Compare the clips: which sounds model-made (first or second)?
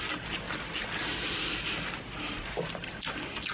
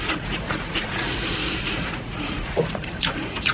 second